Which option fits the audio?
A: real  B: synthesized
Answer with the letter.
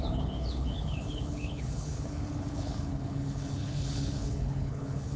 B